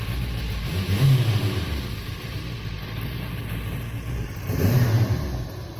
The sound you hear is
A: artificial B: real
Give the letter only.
B